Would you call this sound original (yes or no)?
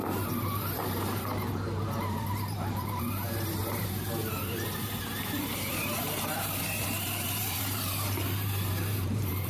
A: no